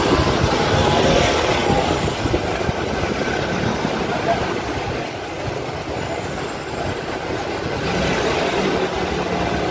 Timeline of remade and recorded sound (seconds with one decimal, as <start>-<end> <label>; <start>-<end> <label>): 0.0-9.7 recorded